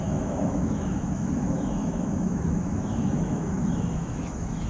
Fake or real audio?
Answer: fake